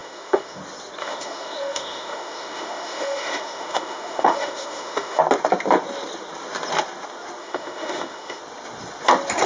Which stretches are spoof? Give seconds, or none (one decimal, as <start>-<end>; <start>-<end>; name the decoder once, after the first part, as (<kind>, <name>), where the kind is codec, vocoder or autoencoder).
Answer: 0.0-0.6 (autoencoder, DAC-VAE); 1.0-5.2; 7.4-8.4